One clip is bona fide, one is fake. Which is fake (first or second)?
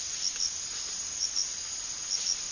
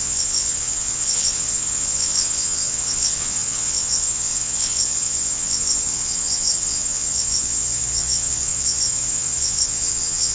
second